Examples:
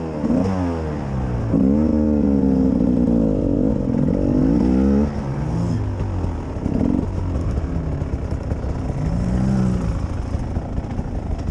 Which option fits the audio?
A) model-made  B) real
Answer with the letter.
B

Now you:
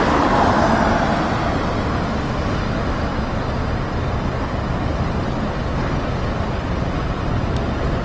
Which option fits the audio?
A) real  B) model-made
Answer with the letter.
A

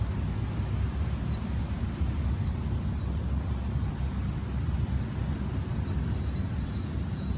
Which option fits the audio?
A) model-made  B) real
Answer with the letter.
B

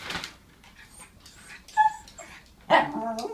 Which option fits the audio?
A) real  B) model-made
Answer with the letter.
A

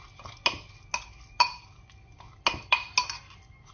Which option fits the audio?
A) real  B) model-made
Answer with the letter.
A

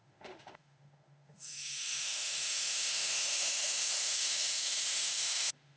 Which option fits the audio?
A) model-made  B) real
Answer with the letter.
A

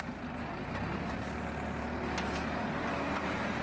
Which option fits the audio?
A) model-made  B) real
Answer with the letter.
B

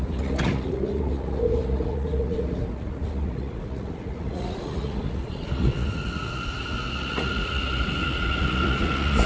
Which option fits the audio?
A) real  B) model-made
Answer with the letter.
B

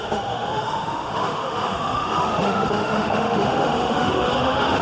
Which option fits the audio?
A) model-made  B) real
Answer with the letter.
A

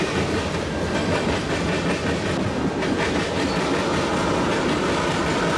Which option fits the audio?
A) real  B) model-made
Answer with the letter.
A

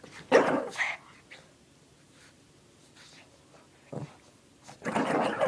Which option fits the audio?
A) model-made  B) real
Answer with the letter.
B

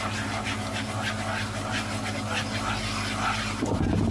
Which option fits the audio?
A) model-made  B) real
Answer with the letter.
B